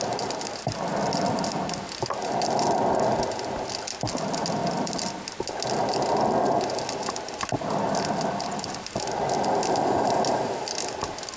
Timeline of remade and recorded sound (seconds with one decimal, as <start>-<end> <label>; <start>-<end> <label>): 0.0-11.4 recorded

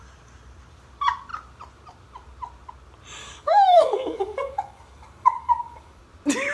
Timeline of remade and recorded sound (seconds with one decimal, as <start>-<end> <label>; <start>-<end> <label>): 0.0-3.2 recorded; 3.2-6.0 remade; 6.0-6.5 recorded

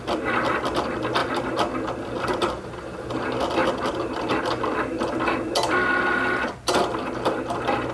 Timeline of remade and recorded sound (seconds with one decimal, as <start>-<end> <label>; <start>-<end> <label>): 0.0-7.9 recorded

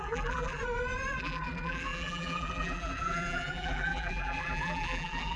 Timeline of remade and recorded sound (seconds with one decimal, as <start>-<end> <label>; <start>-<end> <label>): 0.0-0.6 remade; 0.6-1.2 recorded; 1.2-5.4 remade

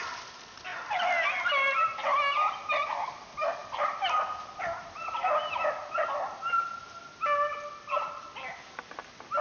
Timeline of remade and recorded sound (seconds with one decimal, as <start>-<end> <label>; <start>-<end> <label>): 0.0-9.4 recorded